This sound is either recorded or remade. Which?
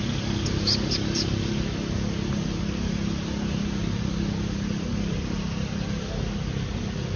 recorded